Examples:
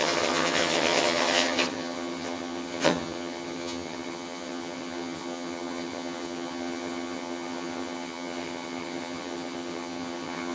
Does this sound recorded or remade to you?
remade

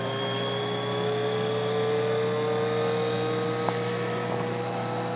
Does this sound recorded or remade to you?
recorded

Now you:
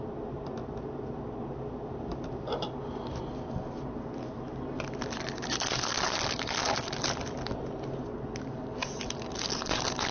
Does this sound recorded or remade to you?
recorded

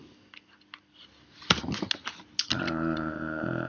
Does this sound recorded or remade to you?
recorded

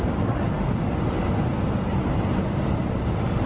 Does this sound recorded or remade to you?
recorded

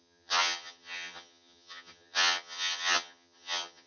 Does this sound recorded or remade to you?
remade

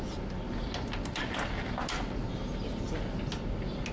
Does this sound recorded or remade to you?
recorded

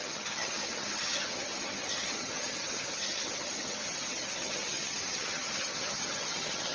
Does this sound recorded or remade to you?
remade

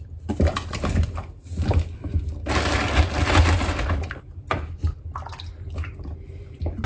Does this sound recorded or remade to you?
recorded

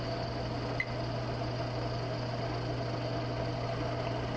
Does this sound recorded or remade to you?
recorded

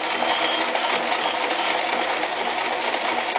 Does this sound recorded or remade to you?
recorded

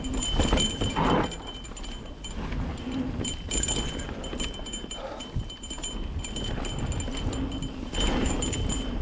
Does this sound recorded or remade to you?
recorded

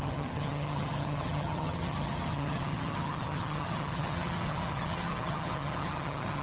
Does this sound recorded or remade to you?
remade